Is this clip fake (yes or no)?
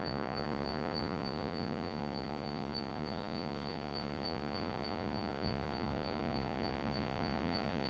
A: yes